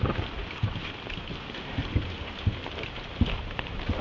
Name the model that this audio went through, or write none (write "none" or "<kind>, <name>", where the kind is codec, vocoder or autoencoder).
none